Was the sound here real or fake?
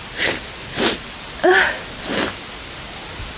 real